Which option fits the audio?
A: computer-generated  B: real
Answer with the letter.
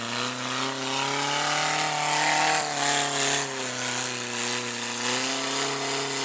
B